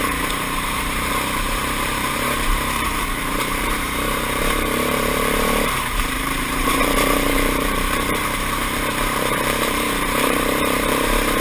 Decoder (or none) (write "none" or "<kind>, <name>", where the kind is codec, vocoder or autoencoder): vocoder, BigVGAN v2